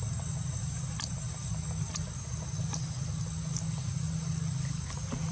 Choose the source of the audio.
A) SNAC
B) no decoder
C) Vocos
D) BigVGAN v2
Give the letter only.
B